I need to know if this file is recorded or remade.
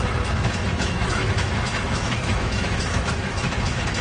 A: remade